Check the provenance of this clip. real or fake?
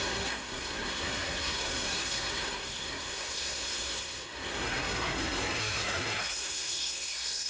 fake